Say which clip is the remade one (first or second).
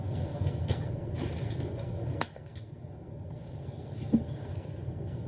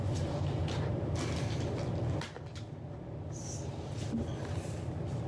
first